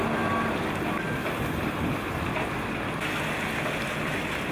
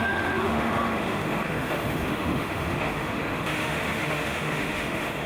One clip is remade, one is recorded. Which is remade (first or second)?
second